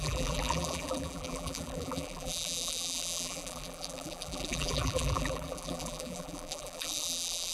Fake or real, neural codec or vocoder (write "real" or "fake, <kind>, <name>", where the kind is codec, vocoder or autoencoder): fake, vocoder, BigVGAN v2